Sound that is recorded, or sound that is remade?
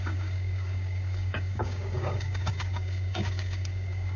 remade